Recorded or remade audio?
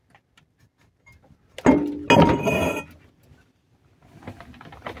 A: recorded